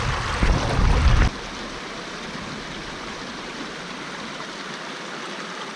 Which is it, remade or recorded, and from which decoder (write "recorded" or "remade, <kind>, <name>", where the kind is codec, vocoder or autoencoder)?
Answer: recorded